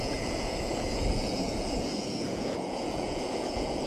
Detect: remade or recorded remade